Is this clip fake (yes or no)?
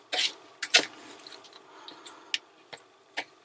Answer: no